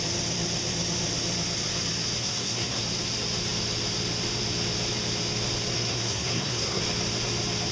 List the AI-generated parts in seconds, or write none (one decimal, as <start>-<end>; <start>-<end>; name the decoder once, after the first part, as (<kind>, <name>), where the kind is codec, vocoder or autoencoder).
2.2-2.8 (codec, SNAC); 5.7-6.8